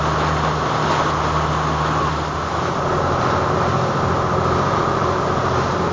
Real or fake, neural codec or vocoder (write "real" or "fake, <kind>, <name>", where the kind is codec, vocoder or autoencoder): real